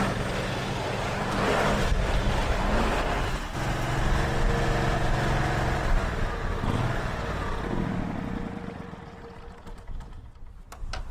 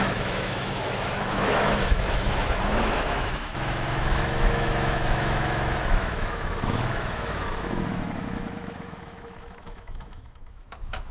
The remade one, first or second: second